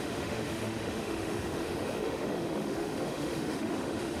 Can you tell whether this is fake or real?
fake